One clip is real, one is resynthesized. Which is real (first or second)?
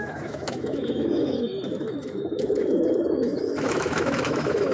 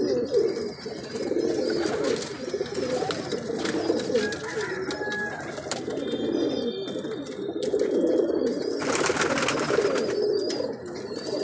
second